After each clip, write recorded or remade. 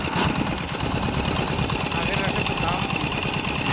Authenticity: recorded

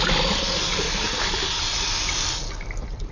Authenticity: recorded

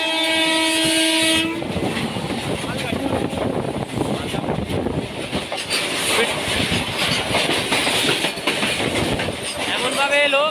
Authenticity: recorded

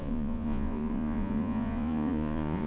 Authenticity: remade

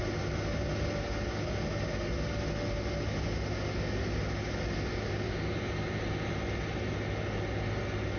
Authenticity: recorded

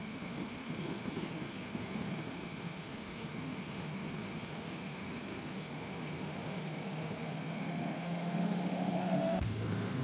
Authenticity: remade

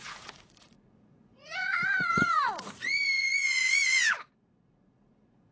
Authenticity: remade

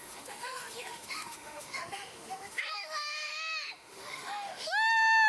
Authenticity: remade